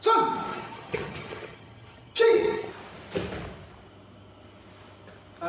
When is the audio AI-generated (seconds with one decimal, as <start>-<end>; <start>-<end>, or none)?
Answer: 0.5-2.7